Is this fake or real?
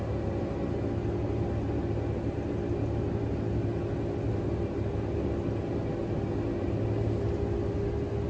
real